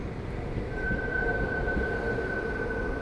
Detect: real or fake real